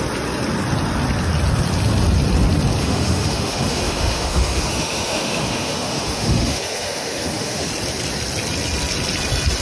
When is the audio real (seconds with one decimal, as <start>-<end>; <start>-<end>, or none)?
0.0-2.8; 7.7-9.6